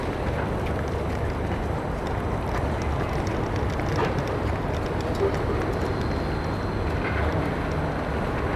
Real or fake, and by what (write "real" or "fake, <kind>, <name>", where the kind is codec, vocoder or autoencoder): real